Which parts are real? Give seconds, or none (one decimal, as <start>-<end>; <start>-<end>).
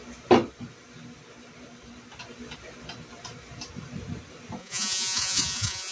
0.0-4.6